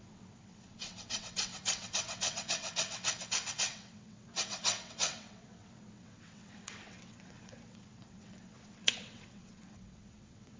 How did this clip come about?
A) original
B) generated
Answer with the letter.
B